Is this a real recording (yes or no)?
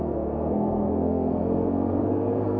no